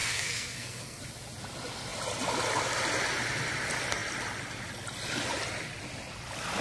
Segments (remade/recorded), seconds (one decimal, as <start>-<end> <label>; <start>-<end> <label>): 0.0-1.0 remade; 1.0-6.6 recorded